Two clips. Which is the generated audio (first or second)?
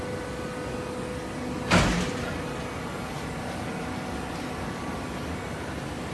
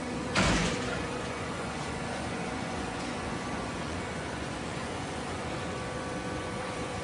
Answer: second